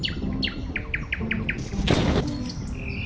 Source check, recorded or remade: recorded